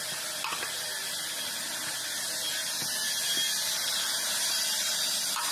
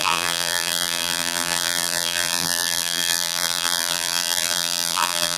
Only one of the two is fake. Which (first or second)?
second